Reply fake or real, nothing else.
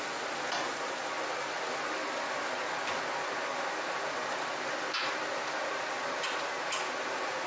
real